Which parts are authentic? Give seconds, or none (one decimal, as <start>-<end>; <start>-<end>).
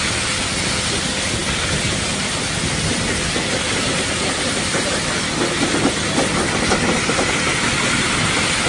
0.0-8.7